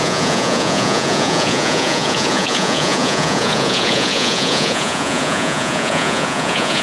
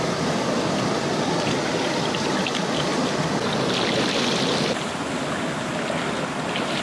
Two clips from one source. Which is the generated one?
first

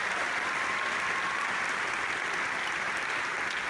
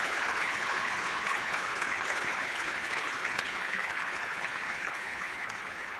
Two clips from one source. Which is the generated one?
second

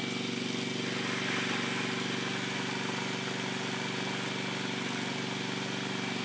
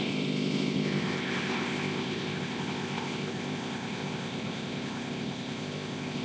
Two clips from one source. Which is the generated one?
second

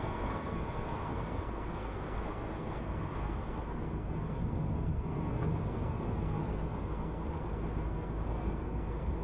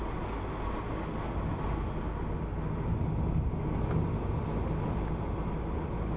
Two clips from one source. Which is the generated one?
first